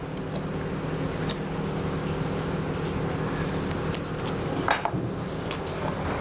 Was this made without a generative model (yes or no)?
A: yes